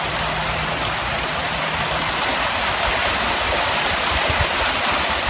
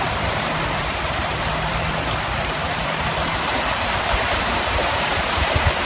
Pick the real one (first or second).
first